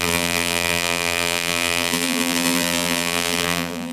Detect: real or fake fake